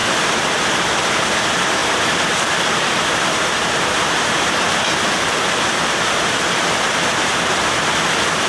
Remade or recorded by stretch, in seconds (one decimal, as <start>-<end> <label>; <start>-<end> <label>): 0.0-0.6 remade; 0.6-1.8 recorded; 1.8-3.2 remade; 3.2-8.5 recorded

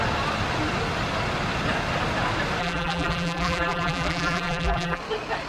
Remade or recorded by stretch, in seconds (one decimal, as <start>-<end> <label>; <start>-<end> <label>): 0.0-2.6 recorded; 2.6-5.0 remade; 5.0-5.5 recorded

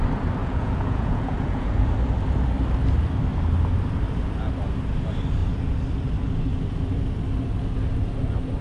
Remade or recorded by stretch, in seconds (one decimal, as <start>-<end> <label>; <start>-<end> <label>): 0.0-0.4 recorded; 0.4-1.7 remade; 1.7-8.6 recorded

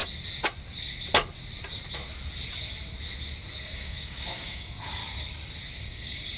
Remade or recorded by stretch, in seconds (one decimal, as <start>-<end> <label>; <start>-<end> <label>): 0.0-3.6 recorded; 3.6-5.0 remade; 5.0-5.8 recorded; 5.8-6.4 remade

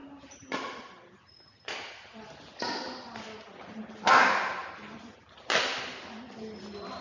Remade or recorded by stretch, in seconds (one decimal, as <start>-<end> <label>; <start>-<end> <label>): 0.0-7.0 recorded

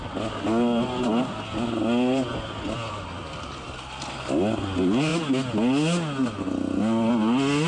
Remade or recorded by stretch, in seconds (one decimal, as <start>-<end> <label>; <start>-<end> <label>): 0.0-2.3 recorded; 2.3-4.1 remade; 4.1-7.7 recorded